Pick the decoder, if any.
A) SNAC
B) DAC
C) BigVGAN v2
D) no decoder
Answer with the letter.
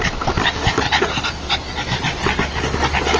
D